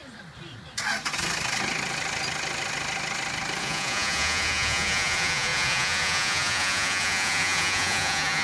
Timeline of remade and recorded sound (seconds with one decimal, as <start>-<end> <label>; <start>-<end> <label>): 0.0-3.6 recorded; 3.6-8.4 remade